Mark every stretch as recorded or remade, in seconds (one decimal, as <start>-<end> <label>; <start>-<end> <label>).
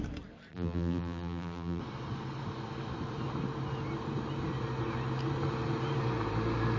0.0-0.5 recorded; 0.5-1.8 remade; 1.8-6.8 recorded